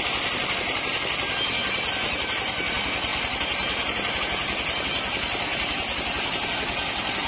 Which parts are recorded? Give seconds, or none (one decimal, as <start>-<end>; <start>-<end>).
0.0-1.6; 2.3-3.1; 4.2-5.5; 6.3-7.3